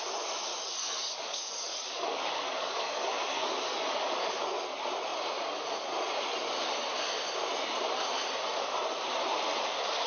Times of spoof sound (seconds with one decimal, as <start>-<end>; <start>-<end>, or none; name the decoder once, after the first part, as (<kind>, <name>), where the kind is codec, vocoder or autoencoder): 0.5-4.3 (codec, DAC)